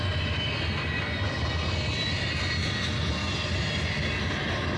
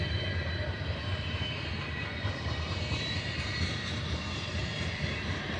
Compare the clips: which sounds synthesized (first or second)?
second